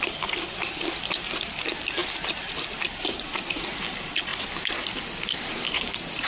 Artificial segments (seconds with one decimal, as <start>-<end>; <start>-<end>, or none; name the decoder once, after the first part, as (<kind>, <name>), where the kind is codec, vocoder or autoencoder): none